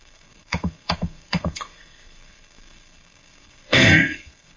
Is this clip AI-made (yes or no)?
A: yes